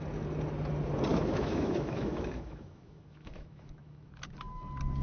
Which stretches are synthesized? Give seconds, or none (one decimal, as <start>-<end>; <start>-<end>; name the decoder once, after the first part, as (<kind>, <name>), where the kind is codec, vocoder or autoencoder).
1.1-4.1 (autoencoder, DAC-VAE)